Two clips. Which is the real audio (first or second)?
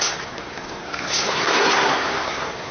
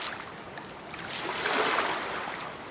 second